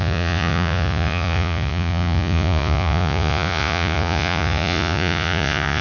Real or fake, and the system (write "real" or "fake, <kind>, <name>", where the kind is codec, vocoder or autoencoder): fake, vocoder, Vocos